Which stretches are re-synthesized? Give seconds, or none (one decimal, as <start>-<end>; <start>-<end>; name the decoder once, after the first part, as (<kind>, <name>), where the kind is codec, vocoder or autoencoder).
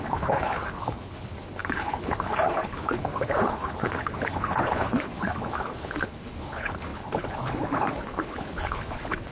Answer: 0.0-9.3 (codec, HILCodec)